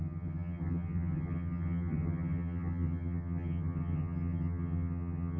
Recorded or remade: remade